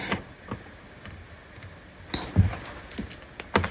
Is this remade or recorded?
recorded